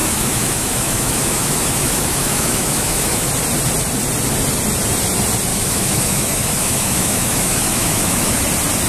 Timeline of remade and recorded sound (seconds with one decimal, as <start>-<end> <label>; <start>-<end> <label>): 0.0-3.3 remade; 3.3-5.5 recorded; 5.5-8.4 remade; 8.4-8.9 recorded

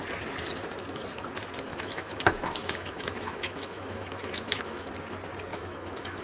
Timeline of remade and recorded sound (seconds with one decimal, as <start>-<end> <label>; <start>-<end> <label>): 0.0-1.7 recorded; 1.7-4.8 remade; 4.8-5.5 recorded; 5.5-6.2 remade

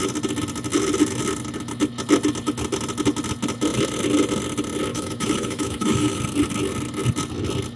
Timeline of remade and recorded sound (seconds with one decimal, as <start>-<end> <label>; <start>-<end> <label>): 0.0-4.9 recorded; 4.9-6.2 remade; 6.2-7.8 recorded